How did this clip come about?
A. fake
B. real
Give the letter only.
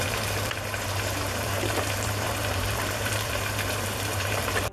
A